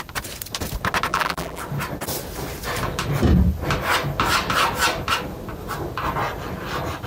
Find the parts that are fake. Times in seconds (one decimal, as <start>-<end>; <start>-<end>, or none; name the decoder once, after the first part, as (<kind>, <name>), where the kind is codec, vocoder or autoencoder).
1.1-1.6 (vocoder, BigVGAN v2)